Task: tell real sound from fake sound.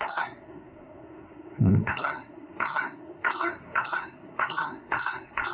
fake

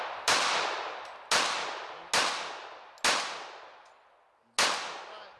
real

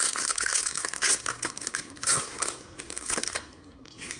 fake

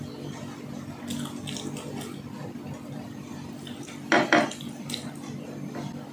real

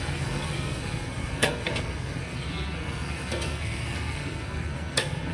fake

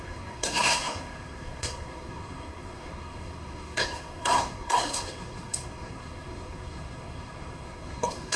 fake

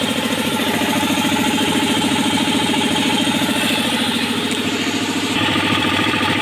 real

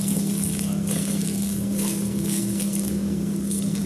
fake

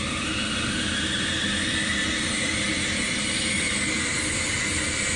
real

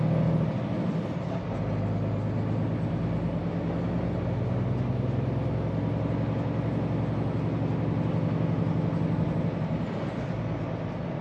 real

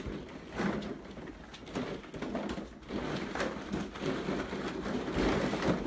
real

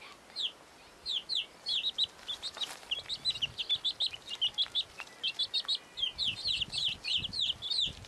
real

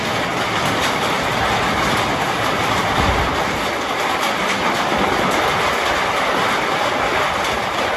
real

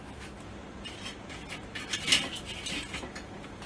real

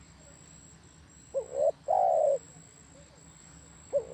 real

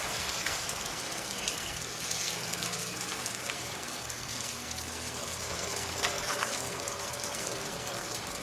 fake